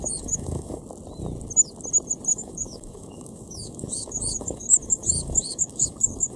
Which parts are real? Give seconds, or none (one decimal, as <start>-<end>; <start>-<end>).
0.8-2.3